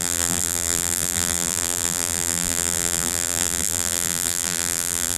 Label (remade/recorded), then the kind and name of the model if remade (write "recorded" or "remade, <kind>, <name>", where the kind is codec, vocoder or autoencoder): remade, vocoder, BigVGAN v2